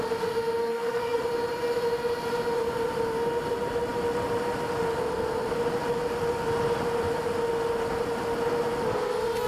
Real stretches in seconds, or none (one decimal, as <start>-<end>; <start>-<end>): 0.0-0.6; 1.2-9.5